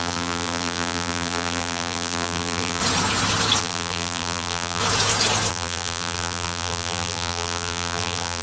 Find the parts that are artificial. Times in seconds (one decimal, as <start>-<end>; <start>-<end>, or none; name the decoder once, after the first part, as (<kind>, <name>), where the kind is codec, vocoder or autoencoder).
0.0-2.8 (vocoder, BigVGAN v2); 3.6-4.8; 5.5-8.4